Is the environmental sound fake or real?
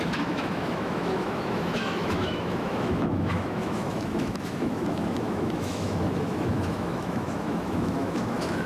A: fake